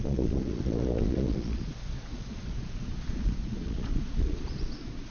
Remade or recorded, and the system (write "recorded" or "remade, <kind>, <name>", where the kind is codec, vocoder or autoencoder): remade, vocoder, Vocos